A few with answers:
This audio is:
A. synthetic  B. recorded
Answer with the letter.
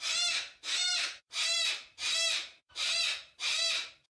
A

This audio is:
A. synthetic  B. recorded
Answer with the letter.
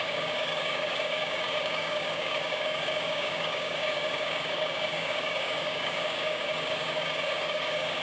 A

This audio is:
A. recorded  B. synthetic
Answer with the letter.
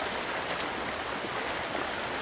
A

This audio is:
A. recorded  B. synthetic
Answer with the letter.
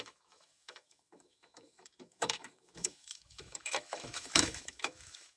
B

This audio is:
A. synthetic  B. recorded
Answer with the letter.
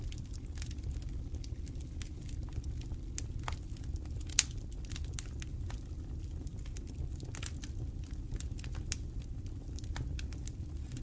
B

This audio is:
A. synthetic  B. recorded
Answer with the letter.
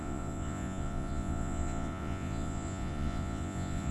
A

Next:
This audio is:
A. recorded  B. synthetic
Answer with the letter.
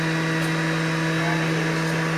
A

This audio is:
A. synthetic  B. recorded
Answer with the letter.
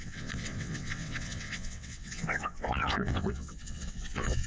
A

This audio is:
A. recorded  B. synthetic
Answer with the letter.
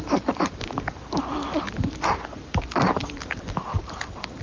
A